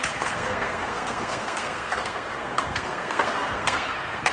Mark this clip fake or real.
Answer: fake